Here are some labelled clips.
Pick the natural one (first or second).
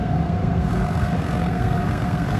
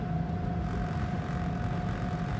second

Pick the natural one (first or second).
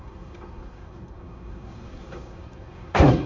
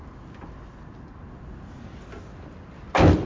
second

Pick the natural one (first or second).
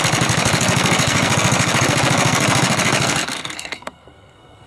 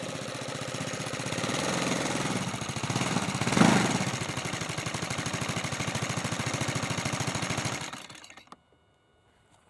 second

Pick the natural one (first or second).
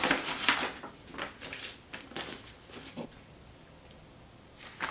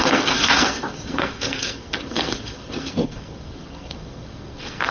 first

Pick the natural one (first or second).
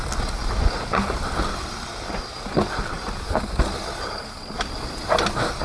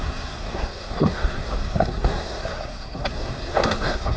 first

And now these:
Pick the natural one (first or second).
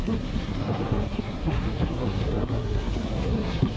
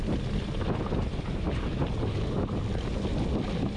second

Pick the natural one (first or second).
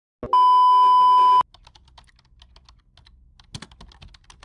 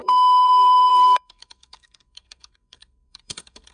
first